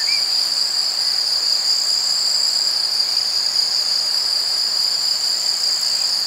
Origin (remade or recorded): recorded